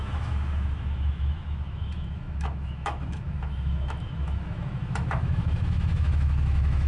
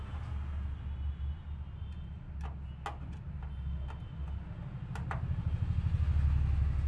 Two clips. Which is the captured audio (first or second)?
second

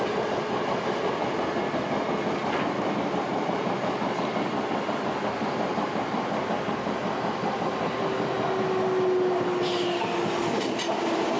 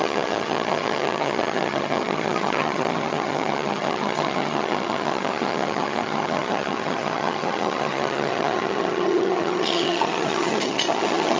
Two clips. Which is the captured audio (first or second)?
first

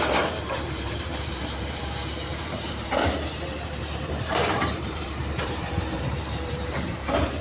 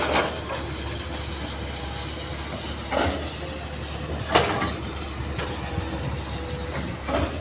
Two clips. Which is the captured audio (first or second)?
second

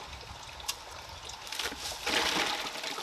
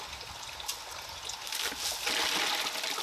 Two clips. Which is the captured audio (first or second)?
second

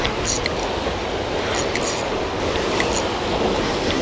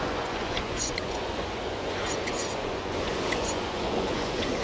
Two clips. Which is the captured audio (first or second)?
first